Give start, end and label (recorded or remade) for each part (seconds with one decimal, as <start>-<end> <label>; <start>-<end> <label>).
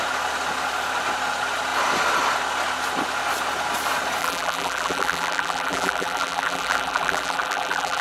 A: 0.0-4.2 recorded; 4.2-8.0 remade